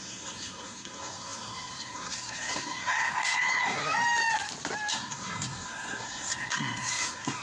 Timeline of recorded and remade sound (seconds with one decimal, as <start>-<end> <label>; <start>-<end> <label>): 0.0-3.8 remade; 3.8-4.9 recorded; 4.9-7.4 remade